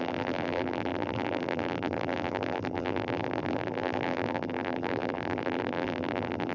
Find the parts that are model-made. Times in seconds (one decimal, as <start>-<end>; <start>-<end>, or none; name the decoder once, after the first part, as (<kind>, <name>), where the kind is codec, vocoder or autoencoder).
0.0-6.5 (vocoder, BigVGAN v2)